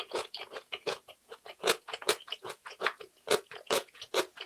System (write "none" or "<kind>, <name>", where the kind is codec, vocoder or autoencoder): vocoder, Vocos